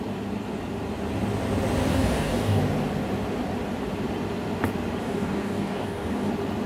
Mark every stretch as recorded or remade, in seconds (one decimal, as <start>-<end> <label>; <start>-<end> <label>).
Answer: 0.0-1.9 recorded; 1.9-2.6 remade; 2.6-5.0 recorded; 5.0-6.3 remade; 6.3-6.7 recorded